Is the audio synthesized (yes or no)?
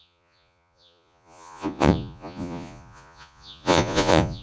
yes